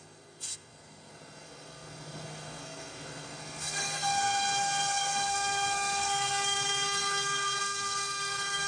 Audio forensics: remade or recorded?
remade